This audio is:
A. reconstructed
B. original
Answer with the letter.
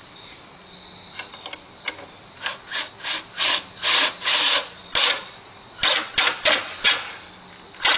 B